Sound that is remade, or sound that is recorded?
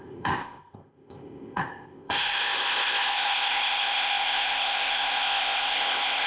remade